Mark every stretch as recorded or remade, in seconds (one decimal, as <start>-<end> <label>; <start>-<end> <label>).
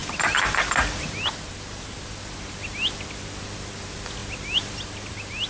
0.0-5.5 recorded